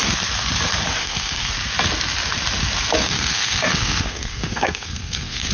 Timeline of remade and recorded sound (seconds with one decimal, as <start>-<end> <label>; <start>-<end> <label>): 0.0-1.0 recorded; 1.0-1.5 remade; 1.5-3.0 recorded; 3.0-5.5 remade